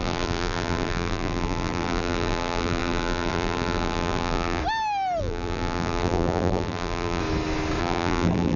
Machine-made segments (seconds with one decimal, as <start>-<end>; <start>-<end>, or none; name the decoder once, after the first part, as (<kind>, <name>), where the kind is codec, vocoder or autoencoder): 0.0-4.6 (vocoder, BigVGAN v2); 5.2-7.2; 7.8-8.6